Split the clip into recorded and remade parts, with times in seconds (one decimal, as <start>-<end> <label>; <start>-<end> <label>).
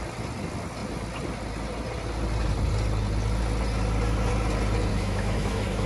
0.0-4.9 recorded; 4.9-5.9 remade